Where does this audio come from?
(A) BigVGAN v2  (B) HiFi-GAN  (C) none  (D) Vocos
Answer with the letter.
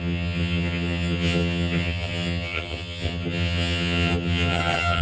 B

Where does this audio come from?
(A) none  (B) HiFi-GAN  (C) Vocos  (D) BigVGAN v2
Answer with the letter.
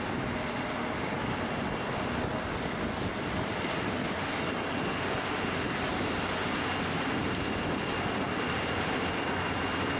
A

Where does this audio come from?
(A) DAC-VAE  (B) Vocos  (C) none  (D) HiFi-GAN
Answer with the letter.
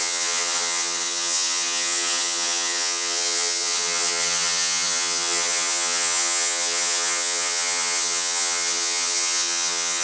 D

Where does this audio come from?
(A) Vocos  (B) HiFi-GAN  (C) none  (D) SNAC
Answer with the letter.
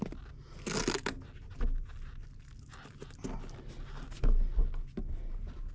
C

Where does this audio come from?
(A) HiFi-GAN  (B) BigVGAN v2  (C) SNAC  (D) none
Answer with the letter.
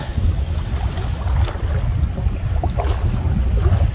D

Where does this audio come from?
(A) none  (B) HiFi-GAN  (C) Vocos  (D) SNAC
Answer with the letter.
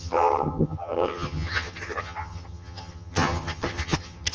B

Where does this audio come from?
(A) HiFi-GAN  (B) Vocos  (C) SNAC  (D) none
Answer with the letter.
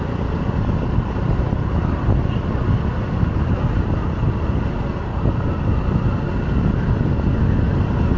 D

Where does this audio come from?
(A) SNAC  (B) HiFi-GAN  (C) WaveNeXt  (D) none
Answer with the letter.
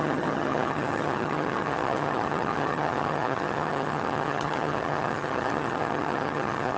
B